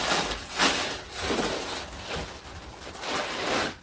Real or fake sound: real